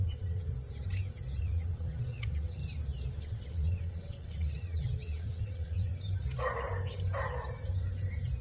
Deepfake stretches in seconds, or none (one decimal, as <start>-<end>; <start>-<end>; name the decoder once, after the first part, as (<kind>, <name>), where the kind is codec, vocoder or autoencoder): 0.0-0.5 (vocoder, WaveNeXt); 1.4-2.6; 3.2-5.9